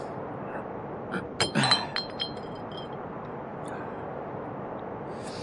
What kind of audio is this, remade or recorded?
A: recorded